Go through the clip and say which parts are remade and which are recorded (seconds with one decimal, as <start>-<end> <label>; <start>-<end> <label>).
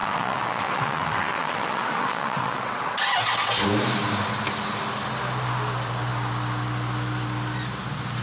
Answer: 0.0-3.0 remade; 3.0-8.2 recorded